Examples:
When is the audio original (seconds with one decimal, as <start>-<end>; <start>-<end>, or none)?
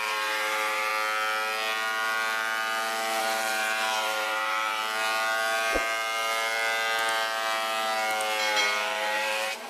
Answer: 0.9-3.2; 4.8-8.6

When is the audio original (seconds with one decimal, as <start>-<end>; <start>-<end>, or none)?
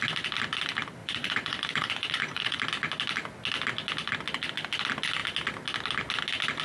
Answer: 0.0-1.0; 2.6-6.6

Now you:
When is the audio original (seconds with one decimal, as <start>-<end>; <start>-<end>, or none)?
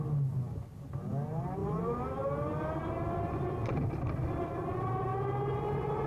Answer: 0.0-6.1